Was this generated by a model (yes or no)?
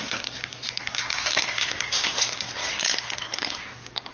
yes